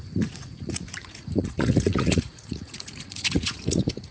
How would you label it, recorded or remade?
remade